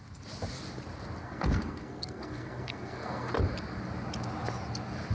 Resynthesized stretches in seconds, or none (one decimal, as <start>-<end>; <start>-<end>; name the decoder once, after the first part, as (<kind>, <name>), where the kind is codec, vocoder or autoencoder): 1.2-3.3 (codec, SNAC)